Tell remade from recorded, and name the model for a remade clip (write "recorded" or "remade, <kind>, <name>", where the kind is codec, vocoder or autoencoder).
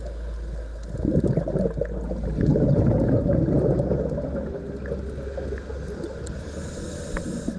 recorded